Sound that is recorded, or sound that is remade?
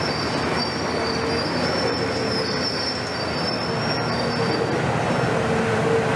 recorded